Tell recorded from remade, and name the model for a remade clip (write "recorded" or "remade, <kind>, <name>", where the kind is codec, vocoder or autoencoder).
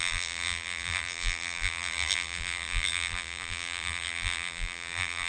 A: remade, vocoder, BigVGAN v2